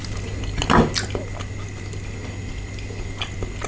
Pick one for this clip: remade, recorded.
recorded